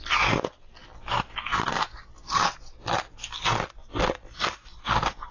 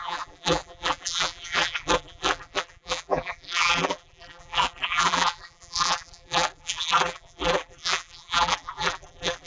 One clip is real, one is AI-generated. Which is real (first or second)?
first